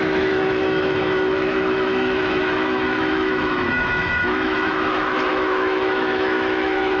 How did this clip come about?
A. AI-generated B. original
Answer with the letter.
A